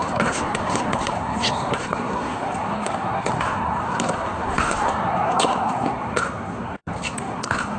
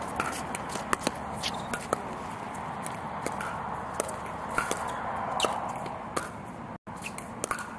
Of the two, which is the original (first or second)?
second